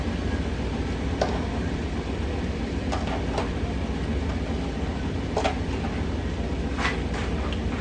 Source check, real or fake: real